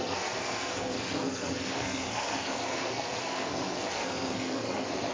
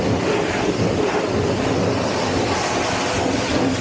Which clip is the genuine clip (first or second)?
second